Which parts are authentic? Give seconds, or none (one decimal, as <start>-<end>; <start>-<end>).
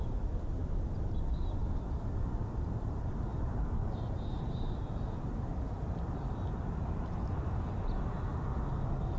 0.0-0.6; 1.4-3.3; 5.6-9.2